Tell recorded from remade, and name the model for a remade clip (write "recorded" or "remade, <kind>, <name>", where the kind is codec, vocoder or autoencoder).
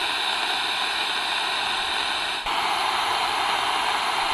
recorded